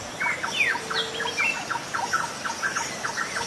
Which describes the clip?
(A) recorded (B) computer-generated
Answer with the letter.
A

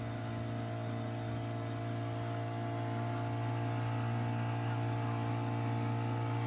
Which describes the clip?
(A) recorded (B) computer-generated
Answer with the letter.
A